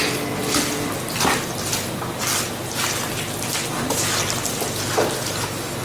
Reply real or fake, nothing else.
real